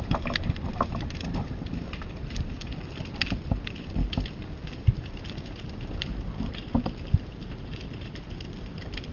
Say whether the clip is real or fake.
fake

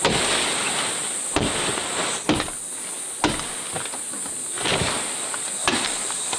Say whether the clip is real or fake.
real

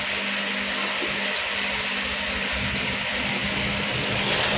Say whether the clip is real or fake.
real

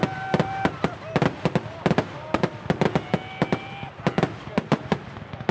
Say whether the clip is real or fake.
real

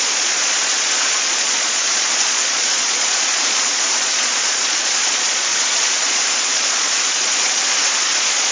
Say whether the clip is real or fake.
fake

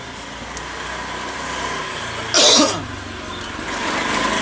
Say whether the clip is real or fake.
real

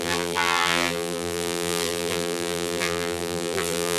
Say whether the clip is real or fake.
fake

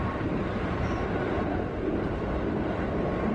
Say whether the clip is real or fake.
fake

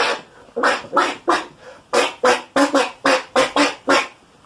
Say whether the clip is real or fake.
real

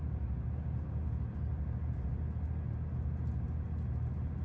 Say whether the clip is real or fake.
real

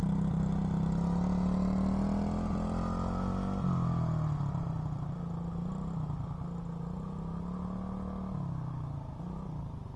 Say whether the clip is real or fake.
real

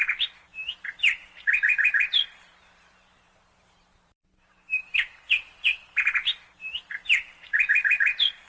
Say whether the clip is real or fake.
fake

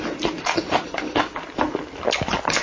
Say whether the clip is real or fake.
real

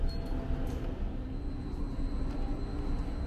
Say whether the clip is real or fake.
real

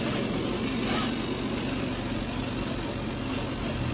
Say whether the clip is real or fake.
real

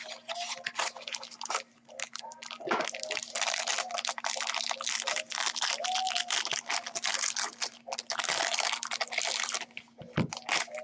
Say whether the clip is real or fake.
real